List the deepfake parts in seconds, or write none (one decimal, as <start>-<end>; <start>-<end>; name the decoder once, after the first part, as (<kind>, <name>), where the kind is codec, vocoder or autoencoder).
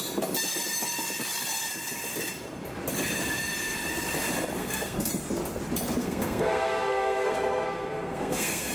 4.6-5.1 (codec, SNAC); 6.0-8.7